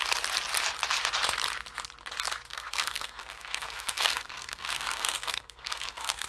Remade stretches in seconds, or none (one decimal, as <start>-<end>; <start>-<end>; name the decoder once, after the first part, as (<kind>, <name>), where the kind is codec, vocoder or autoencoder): 2.5-6.3 (codec, SNAC)